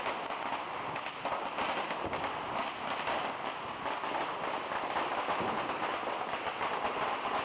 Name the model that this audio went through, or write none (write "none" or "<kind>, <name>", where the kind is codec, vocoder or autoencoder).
none